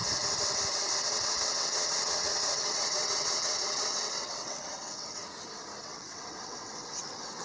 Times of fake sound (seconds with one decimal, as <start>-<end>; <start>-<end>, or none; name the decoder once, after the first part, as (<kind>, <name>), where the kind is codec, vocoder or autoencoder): 1.0-5.2 (vocoder, WaveNeXt); 5.8-7.4